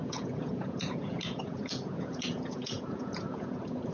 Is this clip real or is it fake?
fake